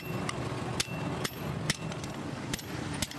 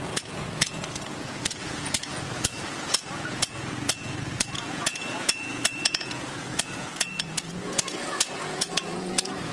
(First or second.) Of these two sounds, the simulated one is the second